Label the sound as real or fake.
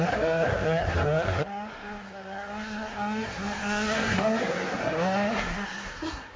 fake